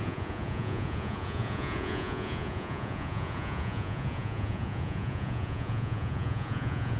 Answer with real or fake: fake